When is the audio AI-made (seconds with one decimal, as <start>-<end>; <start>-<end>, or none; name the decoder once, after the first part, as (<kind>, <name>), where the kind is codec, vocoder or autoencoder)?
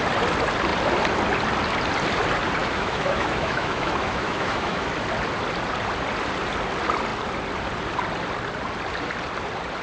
2.6-4.9 (autoencoder, DAC-VAE)